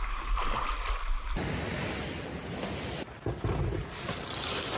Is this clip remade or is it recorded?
recorded